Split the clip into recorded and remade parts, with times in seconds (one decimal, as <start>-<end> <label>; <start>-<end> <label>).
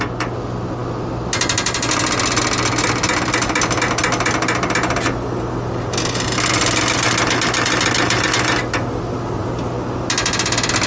0.0-10.9 recorded